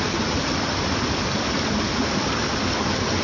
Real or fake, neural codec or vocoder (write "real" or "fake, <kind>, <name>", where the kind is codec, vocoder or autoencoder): real